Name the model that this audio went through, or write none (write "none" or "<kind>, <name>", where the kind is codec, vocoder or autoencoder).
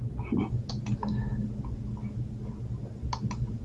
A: none